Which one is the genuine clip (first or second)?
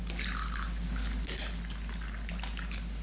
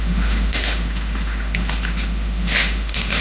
first